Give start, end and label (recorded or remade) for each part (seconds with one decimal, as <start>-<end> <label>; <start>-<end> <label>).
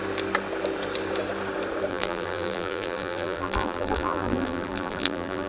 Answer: 0.0-1.9 recorded; 1.9-5.5 remade